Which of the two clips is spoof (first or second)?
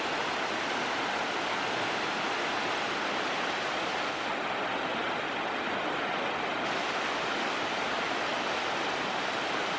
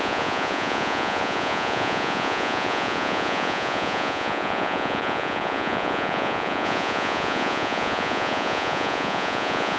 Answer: second